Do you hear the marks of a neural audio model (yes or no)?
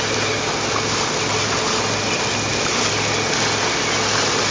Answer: no